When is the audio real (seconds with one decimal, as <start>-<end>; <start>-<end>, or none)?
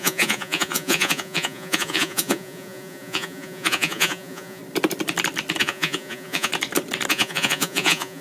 4.6-5.6; 6.5-7.1